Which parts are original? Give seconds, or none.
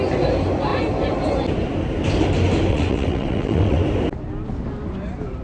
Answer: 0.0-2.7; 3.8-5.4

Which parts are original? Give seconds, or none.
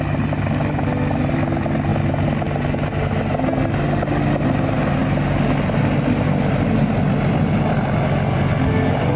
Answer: 0.0-9.2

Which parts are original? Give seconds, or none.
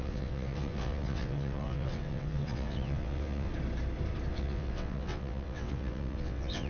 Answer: 3.5-4.3